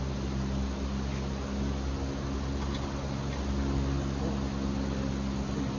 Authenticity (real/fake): real